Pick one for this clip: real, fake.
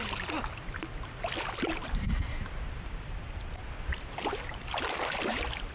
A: real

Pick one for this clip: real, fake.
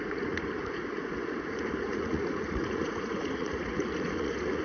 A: fake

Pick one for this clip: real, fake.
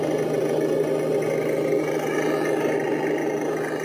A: real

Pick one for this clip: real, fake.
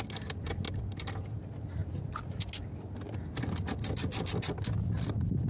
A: real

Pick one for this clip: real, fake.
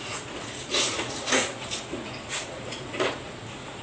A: fake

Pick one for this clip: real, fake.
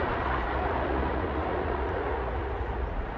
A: fake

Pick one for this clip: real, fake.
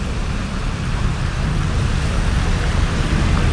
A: real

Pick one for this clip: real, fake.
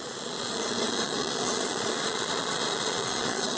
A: fake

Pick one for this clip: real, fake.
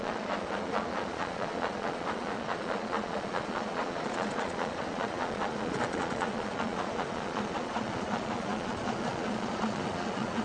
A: fake